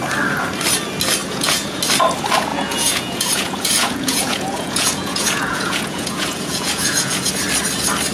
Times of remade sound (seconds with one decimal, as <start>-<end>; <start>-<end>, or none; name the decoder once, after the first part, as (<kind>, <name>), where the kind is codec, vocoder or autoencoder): 1.2-1.8 (vocoder, Vocos); 2.5-7.3